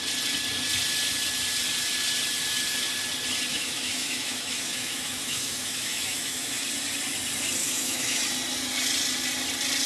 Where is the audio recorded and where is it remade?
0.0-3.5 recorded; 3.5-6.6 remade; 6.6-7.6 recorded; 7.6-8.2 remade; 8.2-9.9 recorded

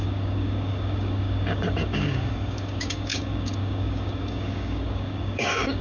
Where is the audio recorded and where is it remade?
0.0-5.8 remade

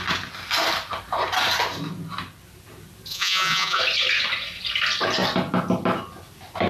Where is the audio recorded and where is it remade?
0.0-3.1 recorded; 3.1-3.8 remade; 3.8-6.7 recorded

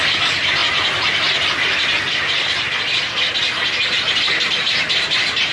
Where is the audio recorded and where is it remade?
0.0-5.5 recorded

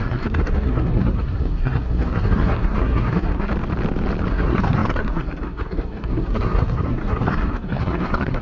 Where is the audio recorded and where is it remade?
0.0-3.5 remade; 3.5-4.3 recorded; 4.3-8.4 remade

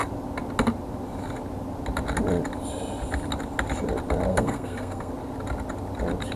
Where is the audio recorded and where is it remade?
0.0-4.3 recorded; 4.3-5.1 remade; 5.1-6.4 recorded

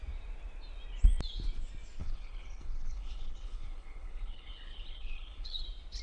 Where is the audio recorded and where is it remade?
0.0-2.0 recorded; 2.0-5.6 remade; 5.6-6.0 recorded